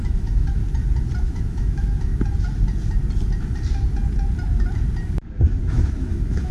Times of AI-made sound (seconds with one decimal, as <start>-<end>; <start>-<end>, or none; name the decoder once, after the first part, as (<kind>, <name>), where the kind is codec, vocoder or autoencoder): 0.0-0.6 (autoencoder, DAC-VAE); 1.2-2.1; 5.6-6.5